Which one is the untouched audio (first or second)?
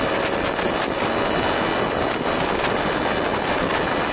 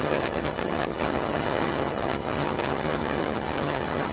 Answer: first